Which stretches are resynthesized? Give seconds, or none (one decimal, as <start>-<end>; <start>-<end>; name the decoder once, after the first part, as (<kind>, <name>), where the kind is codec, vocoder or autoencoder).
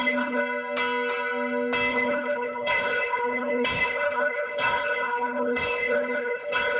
0.0-0.4 (codec, HILCodec); 1.9-6.8